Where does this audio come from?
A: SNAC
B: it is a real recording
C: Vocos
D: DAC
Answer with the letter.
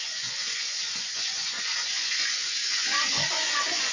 C